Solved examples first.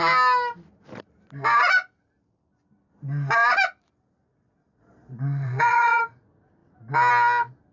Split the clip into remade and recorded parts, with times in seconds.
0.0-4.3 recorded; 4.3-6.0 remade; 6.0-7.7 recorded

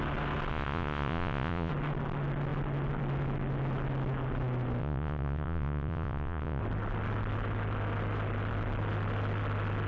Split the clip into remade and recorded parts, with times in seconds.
0.0-0.5 recorded; 0.5-1.7 remade; 1.7-4.8 recorded; 4.8-6.6 remade; 6.6-9.9 recorded

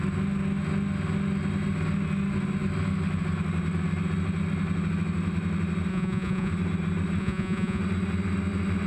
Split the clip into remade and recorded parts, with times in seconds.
0.0-5.9 recorded; 5.9-6.5 remade; 6.5-7.2 recorded; 7.2-7.8 remade; 7.8-8.9 recorded